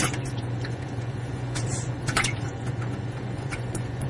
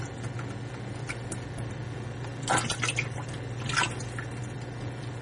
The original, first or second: second